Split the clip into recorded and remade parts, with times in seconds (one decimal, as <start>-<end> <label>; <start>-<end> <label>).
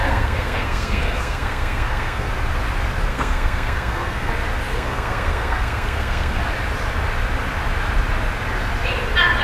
0.0-2.3 remade; 2.3-3.1 recorded; 3.1-4.3 remade; 4.3-4.7 recorded; 4.7-6.4 remade; 6.4-9.4 recorded